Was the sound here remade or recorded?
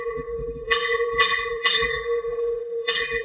remade